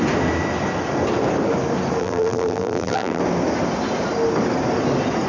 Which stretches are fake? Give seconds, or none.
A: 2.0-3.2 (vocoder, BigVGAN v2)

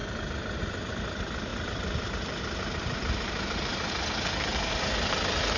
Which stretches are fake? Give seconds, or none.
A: 0.0-0.6 (vocoder, BigVGAN v2); 1.5-4.7

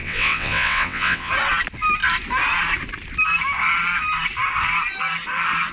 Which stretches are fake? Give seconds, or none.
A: 0.0-1.3 (vocoder, WaveNeXt)